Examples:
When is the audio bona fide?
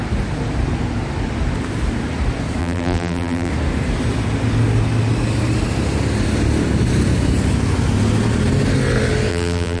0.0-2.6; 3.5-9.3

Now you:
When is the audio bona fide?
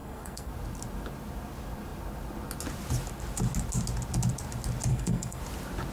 0.5-4.9; 5.4-5.9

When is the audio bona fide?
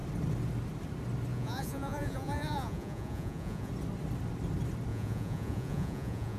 0.0-1.3; 3.7-4.9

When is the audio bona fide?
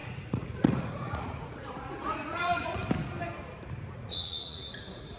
2.8-3.9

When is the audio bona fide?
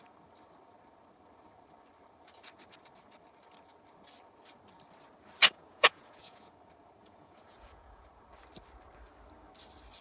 0.0-5.4; 6.5-7.0; 8.1-10.0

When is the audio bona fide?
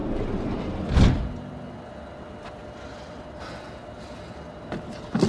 0.0-5.3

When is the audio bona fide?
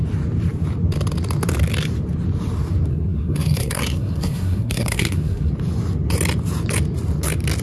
0.0-2.9; 5.5-7.6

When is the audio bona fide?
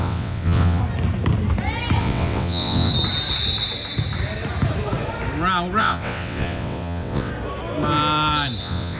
0.8-2.0; 2.9-5.8; 7.3-8.6